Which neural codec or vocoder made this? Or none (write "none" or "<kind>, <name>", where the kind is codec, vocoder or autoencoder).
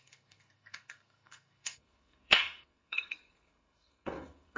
codec, SNAC